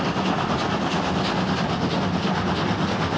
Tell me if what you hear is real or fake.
real